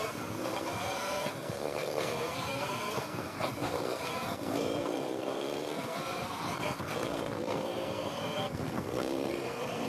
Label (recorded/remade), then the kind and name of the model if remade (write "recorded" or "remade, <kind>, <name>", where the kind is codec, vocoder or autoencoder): remade, codec, SNAC